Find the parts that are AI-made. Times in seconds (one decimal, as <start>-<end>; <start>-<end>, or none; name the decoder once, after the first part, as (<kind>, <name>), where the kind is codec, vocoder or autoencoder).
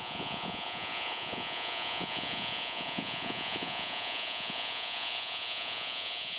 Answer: 0.0-6.4 (vocoder, Vocos)